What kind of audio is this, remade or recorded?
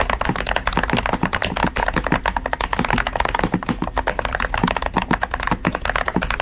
recorded